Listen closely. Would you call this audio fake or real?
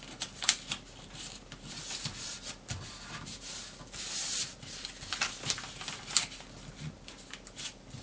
real